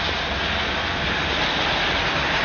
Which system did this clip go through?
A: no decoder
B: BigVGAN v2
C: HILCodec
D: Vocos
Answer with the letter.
A